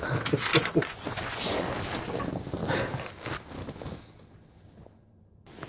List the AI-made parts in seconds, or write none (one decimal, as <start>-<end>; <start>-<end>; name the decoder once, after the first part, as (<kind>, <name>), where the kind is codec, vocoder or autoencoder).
0.5-1.7 (vocoder, Vocos)